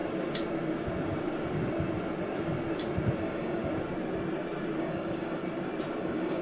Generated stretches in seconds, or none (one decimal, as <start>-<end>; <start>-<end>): 3.2-3.6; 4.8-5.4; 6.0-6.4